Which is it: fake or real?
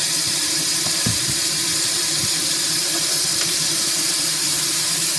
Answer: fake